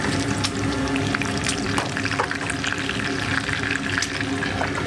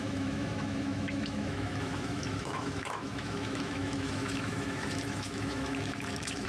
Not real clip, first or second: second